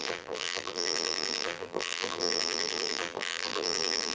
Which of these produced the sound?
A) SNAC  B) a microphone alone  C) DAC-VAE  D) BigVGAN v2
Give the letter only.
D